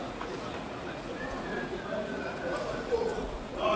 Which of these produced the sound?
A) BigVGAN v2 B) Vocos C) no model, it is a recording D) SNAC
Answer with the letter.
B